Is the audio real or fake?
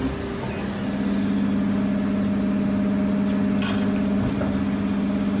real